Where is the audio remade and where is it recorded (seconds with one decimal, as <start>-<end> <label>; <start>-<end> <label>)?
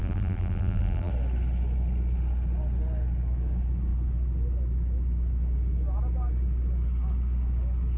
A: 0.0-1.1 remade; 1.1-8.0 recorded